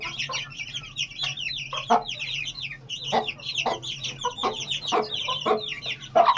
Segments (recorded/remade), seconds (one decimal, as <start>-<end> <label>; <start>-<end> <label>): 0.0-6.4 recorded